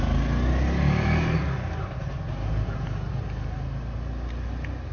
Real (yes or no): yes